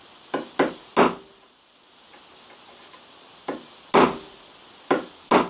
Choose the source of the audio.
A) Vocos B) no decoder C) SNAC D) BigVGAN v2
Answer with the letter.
B